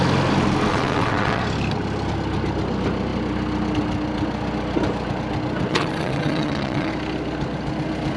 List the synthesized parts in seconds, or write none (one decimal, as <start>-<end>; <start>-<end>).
0.7-1.4; 5.7-6.9